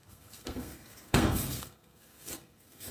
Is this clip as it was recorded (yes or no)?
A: no